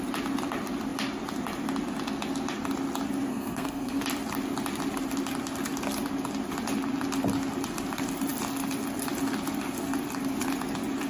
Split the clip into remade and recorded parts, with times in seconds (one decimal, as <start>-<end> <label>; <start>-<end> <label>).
0.0-3.3 recorded; 3.3-4.0 remade; 4.0-11.1 recorded